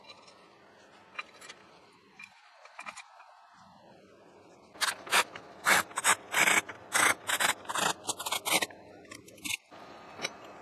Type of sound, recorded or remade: recorded